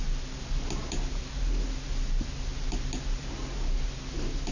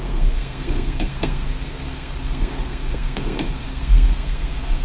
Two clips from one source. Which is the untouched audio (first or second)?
first